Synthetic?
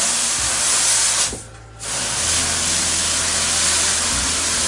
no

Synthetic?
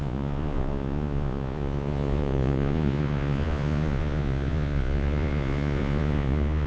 yes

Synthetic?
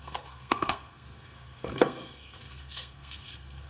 yes